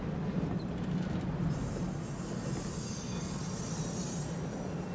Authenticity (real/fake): real